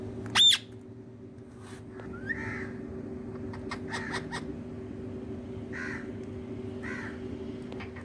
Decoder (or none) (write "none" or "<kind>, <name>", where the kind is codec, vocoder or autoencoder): none